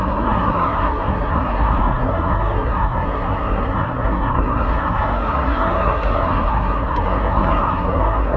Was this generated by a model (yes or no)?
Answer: yes